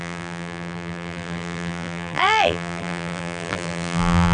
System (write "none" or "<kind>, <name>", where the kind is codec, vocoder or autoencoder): vocoder, BigVGAN v2